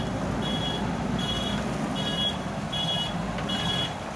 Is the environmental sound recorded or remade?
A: recorded